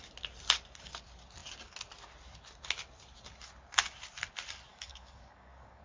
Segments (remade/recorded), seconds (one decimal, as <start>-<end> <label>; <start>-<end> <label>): 0.0-4.7 recorded; 4.7-5.8 remade